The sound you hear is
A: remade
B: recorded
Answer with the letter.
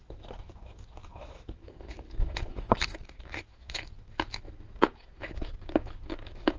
A